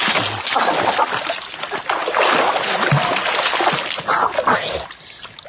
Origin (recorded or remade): recorded